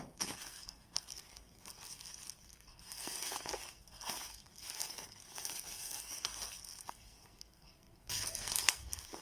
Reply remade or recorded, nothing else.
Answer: remade